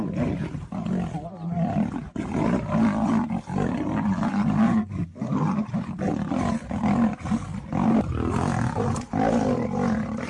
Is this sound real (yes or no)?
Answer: yes